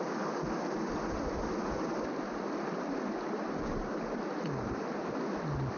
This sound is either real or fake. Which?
real